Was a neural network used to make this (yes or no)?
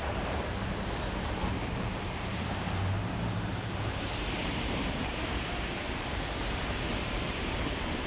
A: yes